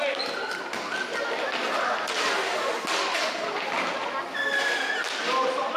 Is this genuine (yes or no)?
yes